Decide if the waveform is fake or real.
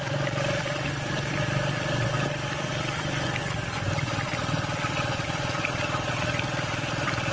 fake